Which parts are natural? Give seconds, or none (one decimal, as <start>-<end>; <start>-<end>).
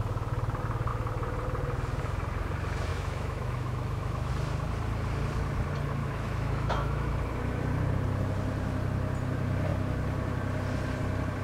0.0-2.9; 4.3-6.0; 7.2-11.4